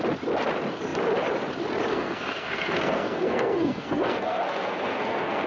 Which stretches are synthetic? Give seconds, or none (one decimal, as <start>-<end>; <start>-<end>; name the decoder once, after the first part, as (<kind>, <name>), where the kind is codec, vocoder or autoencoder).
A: 1.9-5.5 (codec, SNAC)